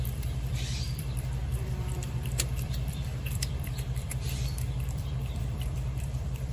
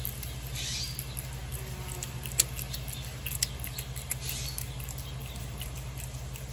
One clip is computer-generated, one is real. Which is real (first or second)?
second